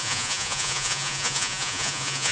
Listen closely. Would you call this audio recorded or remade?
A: remade